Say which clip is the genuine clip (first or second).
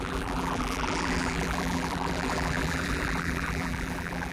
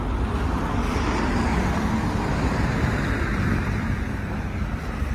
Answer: second